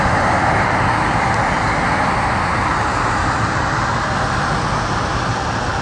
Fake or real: real